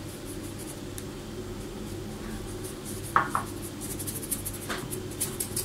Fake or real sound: real